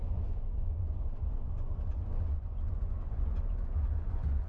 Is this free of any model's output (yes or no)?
no